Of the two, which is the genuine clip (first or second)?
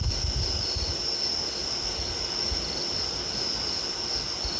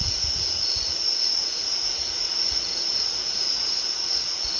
first